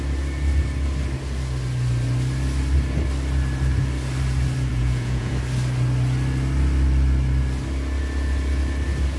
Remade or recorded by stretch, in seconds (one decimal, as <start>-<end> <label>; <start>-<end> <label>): 0.0-4.7 recorded; 4.7-5.3 remade; 5.3-9.2 recorded